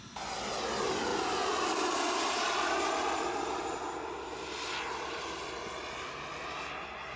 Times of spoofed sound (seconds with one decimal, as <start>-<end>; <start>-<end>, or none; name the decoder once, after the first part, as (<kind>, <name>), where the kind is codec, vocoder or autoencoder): none